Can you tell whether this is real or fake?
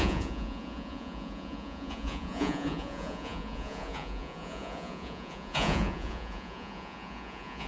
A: fake